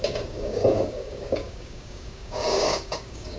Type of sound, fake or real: fake